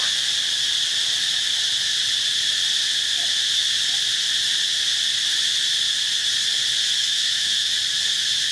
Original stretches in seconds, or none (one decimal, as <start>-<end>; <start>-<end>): 0.0-7.0; 7.7-8.5